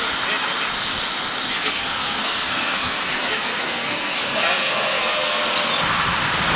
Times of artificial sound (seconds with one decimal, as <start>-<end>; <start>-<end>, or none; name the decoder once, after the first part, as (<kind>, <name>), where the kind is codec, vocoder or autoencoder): 1.5-5.4 (codec, SNAC)